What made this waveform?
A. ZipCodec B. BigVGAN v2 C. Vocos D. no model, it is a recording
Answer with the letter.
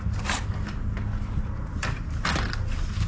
D